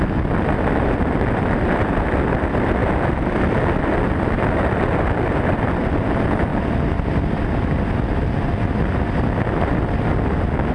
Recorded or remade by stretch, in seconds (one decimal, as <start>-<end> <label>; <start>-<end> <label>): 0.0-6.5 recorded; 6.5-7.4 remade; 7.4-10.7 recorded